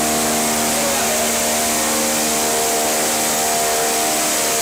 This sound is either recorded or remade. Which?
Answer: recorded